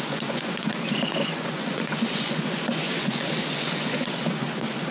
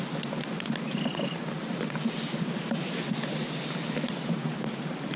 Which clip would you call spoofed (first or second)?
first